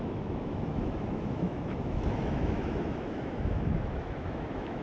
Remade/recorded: remade